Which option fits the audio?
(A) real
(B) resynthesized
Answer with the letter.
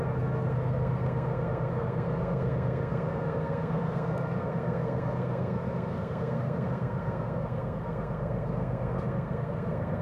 B